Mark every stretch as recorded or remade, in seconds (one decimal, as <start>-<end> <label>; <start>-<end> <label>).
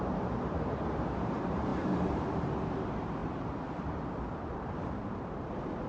0.0-5.9 remade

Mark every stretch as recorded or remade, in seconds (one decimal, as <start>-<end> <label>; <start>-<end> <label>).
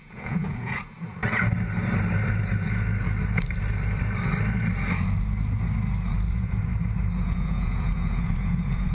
0.0-1.2 remade; 1.2-6.3 recorded; 6.3-6.7 remade; 6.7-7.3 recorded; 7.3-8.9 remade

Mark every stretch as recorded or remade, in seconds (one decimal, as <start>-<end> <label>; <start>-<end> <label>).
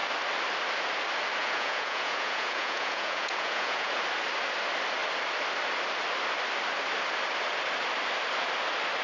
0.0-1.4 recorded; 1.4-3.9 remade; 3.9-9.0 recorded